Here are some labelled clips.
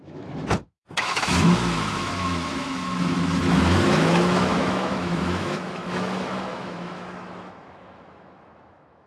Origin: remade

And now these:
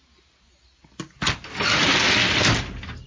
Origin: recorded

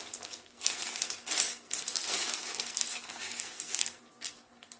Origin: remade